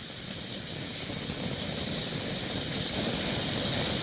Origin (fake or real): real